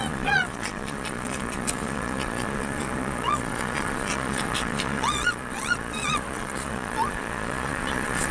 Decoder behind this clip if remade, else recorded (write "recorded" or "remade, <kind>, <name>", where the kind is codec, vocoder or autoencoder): remade, vocoder, Vocos